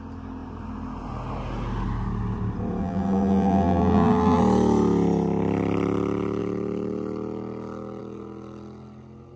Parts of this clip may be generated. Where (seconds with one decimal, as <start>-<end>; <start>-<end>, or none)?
2.8-4.4